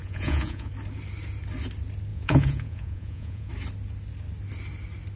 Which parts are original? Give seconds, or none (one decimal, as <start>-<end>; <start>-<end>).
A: 0.7-2.1; 3.5-5.2